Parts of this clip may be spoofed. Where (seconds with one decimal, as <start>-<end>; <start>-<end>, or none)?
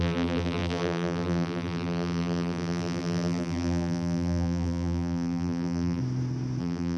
0.0-6.0; 6.6-7.0